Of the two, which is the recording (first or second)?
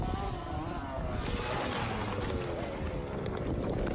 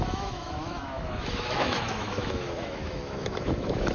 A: first